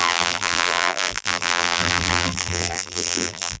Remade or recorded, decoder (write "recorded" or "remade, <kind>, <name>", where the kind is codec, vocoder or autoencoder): remade, vocoder, BigVGAN v2